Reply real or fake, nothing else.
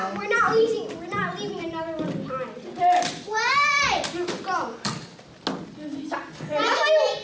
real